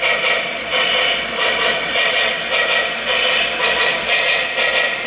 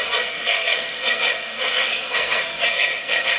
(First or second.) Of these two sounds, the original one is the first